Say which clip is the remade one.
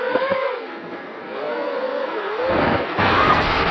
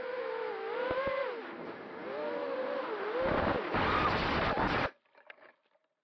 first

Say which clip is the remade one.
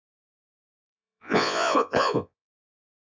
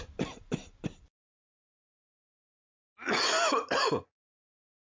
first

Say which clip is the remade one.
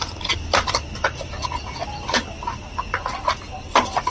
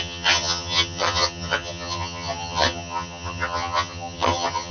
second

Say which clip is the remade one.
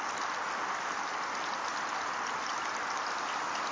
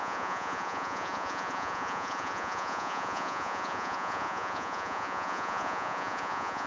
second